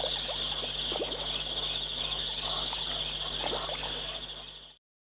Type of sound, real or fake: real